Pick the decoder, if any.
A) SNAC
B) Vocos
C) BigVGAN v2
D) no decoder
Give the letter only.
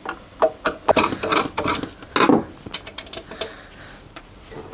D